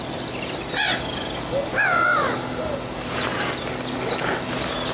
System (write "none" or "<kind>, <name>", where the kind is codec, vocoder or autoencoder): none